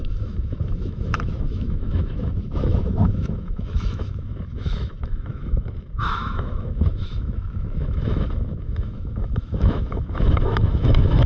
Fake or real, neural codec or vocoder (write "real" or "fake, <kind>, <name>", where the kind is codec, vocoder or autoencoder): fake, autoencoder, DAC-VAE